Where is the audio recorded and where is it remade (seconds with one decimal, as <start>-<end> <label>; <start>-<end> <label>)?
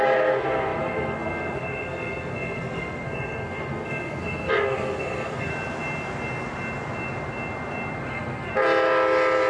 0.0-5.5 remade; 5.5-8.0 recorded; 8.0-8.5 remade; 8.5-9.5 recorded